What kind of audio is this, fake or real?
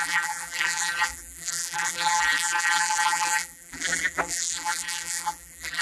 fake